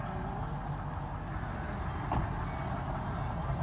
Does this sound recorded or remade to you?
recorded